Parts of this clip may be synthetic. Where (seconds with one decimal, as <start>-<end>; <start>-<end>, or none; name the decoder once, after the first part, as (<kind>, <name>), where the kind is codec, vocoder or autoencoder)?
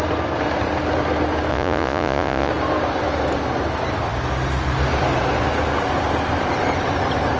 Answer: 1.5-2.5 (vocoder, Vocos)